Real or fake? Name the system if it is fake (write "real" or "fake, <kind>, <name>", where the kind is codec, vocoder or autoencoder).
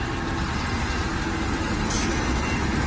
real